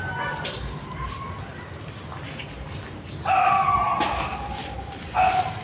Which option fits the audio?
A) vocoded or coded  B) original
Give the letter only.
B